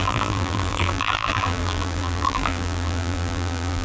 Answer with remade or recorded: remade